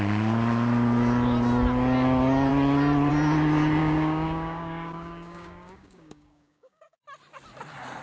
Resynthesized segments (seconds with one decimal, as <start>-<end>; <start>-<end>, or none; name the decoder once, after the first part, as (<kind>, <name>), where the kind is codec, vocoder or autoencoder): 3.8-7.0 (codec, DAC)